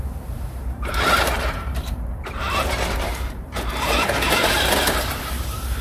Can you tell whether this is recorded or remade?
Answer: remade